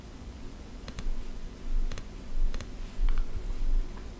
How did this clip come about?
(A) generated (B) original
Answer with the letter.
A